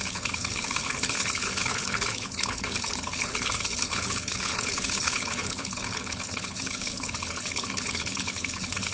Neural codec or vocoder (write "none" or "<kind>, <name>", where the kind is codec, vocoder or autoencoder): codec, HILCodec